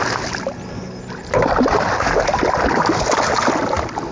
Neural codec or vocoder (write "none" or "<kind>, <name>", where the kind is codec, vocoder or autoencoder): none